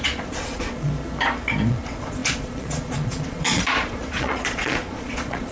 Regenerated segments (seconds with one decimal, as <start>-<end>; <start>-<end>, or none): 0.0-0.9; 1.7-5.5